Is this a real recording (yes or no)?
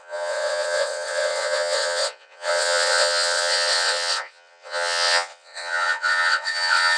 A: no